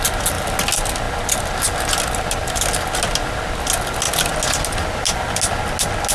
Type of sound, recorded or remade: recorded